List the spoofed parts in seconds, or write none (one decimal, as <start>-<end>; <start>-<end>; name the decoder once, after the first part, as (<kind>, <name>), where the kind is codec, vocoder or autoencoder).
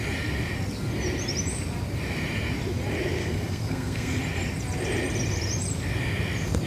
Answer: 3.2-4.2 (codec, SNAC)